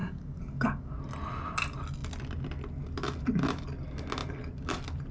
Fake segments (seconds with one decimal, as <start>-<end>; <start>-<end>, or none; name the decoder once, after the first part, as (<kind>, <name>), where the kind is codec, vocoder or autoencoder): 0.0-0.9 (codec, DAC)